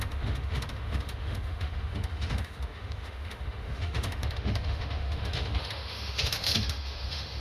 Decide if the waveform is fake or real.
fake